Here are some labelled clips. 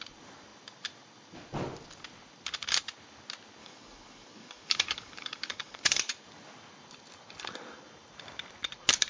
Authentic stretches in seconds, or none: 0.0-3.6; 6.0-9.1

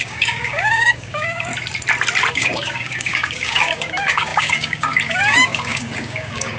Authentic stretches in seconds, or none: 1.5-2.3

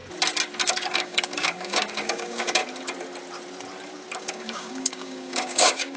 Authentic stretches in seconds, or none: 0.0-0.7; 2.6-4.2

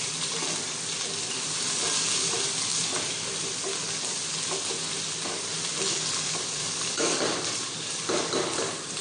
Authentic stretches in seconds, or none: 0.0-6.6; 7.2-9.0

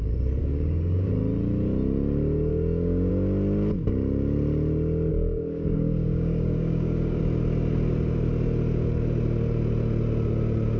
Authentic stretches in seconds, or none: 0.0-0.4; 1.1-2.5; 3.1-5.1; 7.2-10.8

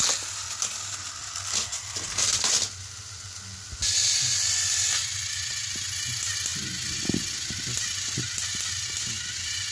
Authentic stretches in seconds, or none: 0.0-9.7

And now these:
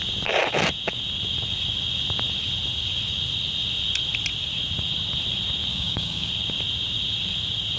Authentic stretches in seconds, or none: 0.0-5.7; 6.3-7.8

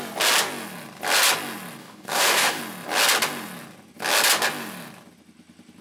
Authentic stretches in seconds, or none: 0.0-1.8; 2.6-5.8